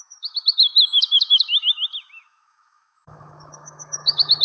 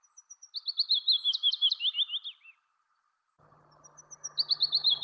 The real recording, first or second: second